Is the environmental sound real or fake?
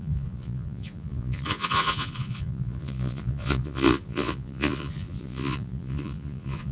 fake